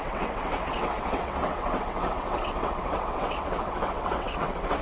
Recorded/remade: remade